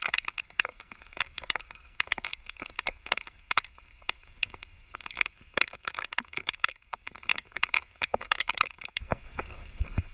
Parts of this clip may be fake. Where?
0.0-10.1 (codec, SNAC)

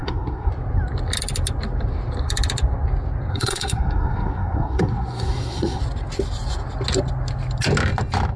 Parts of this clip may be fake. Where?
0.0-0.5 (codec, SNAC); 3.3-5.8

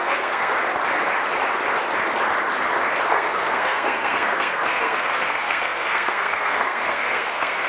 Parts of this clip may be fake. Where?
0.0-0.5 (codec, SNAC); 3.1-7.7

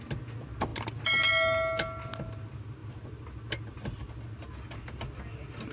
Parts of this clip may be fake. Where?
none

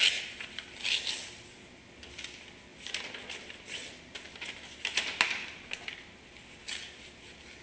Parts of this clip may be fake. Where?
none

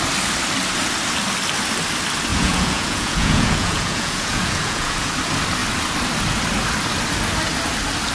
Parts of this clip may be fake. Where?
2.3-5.1 (vocoder, Vocos)

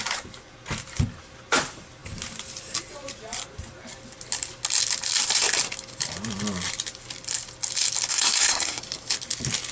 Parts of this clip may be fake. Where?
8.1-8.8 (codec, SNAC)

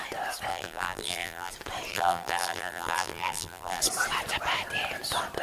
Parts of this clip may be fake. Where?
0.5-1.5 (vocoder, BigVGAN v2); 1.9-3.8